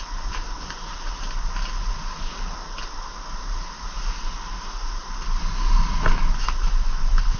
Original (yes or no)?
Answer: yes